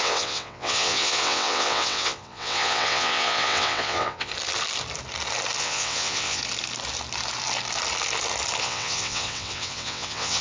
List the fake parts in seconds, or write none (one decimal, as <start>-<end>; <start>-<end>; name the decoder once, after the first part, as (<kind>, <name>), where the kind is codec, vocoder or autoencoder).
0.0-4.3 (vocoder, WaveNeXt); 5.6-6.4; 8.6-10.4